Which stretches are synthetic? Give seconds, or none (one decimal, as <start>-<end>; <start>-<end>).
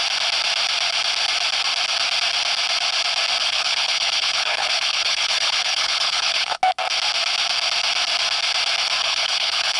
3.4-6.6; 9.0-9.8